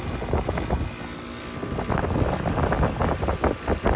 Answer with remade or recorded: recorded